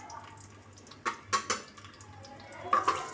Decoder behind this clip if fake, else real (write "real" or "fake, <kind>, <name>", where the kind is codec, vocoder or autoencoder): real